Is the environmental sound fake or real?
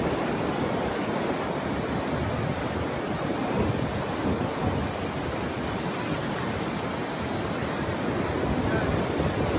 real